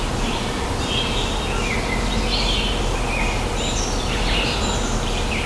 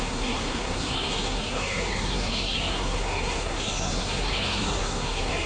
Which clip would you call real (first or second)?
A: first